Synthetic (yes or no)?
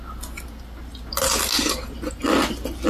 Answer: no